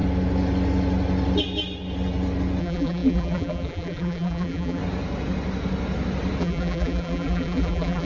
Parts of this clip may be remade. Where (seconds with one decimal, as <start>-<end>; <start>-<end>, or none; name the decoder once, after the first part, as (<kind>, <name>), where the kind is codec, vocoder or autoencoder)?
2.6-4.8 (vocoder, BigVGAN v2); 6.4-8.1